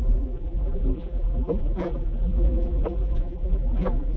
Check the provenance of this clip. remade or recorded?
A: remade